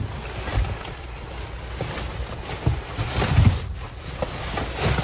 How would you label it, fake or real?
real